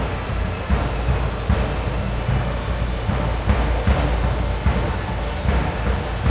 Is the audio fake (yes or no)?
no